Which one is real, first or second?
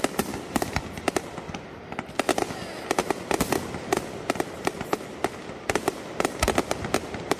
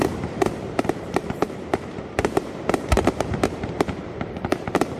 first